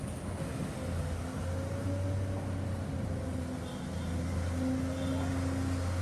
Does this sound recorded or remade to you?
recorded